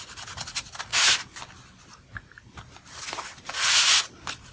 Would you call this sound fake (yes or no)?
no